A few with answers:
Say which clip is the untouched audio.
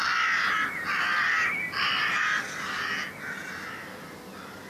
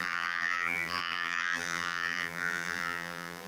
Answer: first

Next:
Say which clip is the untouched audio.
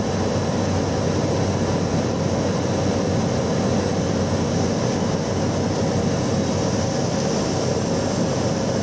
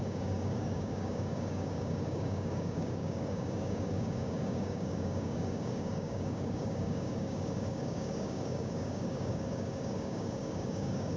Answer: first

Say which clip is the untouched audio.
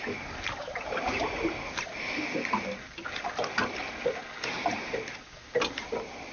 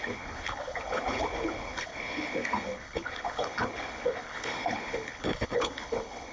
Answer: first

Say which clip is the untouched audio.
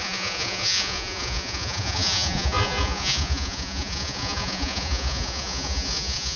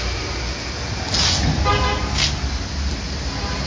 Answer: second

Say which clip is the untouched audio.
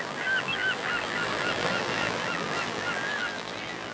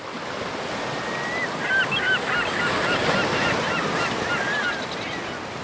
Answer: second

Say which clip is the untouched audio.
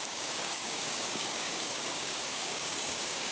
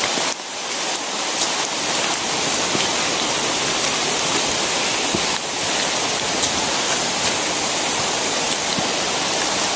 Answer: second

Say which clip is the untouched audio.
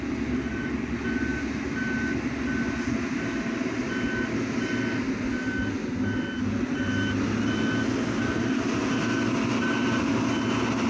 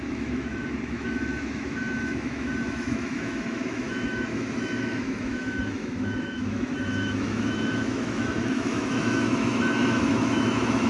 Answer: first